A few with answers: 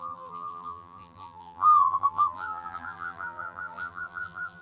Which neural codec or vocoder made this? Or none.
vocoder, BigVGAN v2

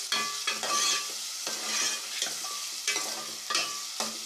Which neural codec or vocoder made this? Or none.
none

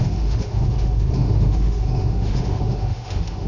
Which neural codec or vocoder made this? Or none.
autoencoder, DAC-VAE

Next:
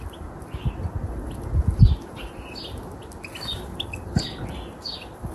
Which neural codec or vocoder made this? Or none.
none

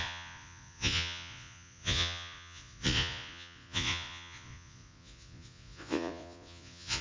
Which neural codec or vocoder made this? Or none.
vocoder, Vocos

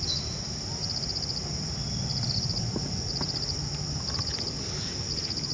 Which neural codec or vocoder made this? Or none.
none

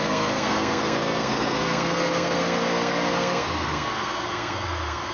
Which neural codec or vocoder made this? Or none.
codec, SNAC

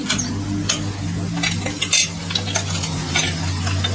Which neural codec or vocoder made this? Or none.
none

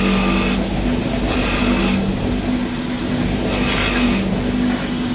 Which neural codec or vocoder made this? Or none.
none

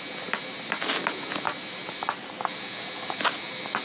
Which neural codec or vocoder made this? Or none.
vocoder, BigVGAN v2